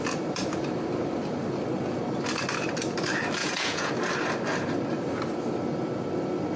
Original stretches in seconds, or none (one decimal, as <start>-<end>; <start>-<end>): 0.0-3.4; 3.9-6.6